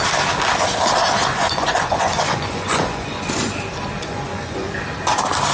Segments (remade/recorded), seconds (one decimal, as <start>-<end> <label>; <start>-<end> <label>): 0.0-1.3 recorded; 1.3-3.2 remade; 3.2-4.0 recorded; 4.0-4.7 remade; 4.7-5.5 recorded